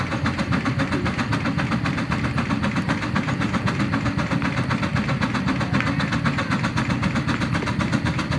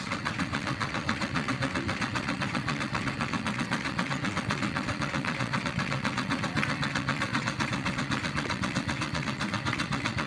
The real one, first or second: first